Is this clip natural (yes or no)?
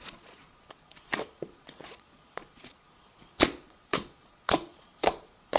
no